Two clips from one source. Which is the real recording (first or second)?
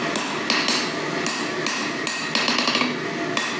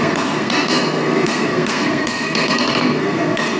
first